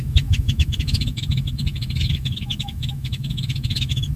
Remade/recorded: remade